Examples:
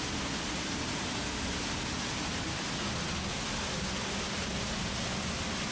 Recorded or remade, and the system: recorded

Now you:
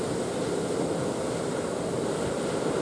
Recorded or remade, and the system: recorded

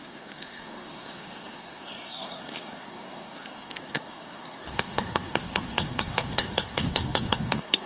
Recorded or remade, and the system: remade, codec, SNAC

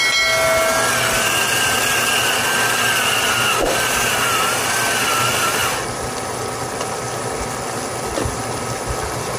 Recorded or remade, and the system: recorded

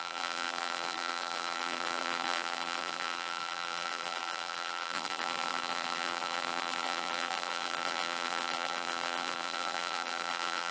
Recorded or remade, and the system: remade, vocoder, BigVGAN v2